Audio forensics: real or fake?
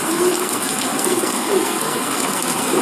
fake